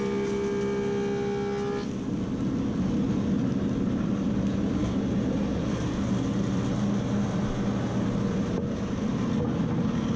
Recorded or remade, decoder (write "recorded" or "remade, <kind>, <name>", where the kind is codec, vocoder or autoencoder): recorded